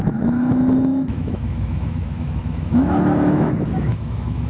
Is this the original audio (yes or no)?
no